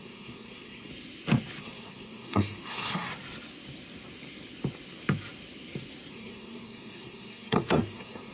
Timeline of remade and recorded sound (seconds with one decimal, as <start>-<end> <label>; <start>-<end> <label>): 0.0-0.9 remade; 0.9-1.6 recorded; 1.6-3.1 remade; 3.1-6.1 recorded; 6.1-8.3 remade